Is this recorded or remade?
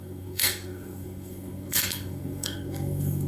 remade